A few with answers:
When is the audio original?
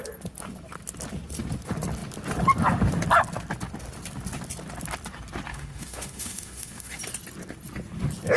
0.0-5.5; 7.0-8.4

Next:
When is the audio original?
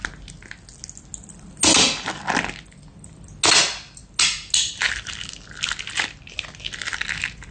0.0-7.5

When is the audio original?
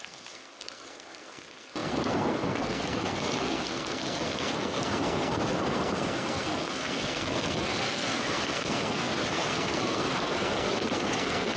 none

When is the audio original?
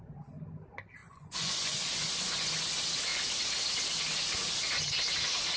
0.0-1.0; 2.5-5.6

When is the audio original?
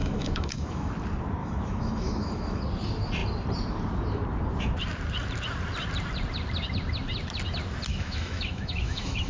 0.9-1.4; 2.6-7.9